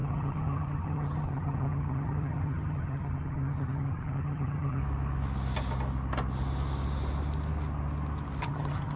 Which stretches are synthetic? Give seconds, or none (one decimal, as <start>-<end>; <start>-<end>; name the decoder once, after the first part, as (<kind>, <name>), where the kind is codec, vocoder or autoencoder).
0.0-4.8 (vocoder, HiFi-GAN); 8.4-9.0